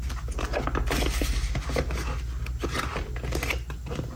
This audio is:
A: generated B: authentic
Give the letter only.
B